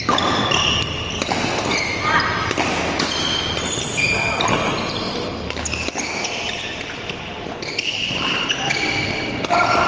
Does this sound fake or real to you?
real